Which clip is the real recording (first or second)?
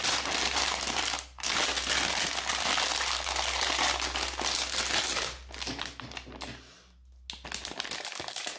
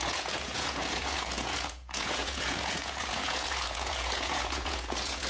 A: first